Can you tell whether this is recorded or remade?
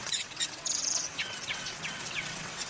remade